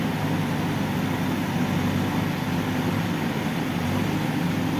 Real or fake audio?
real